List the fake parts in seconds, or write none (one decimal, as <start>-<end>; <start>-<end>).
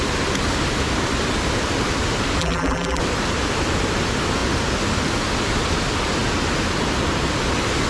2.4-3.0